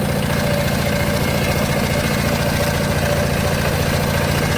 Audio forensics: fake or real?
real